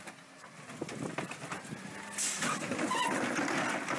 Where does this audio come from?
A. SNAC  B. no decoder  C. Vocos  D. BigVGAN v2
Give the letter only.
B